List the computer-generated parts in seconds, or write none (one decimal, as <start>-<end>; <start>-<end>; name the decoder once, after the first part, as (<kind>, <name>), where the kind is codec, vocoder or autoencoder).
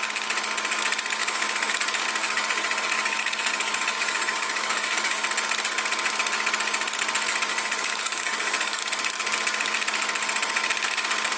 1.2-1.7 (codec, DAC); 2.2-5.2; 7.5-8.8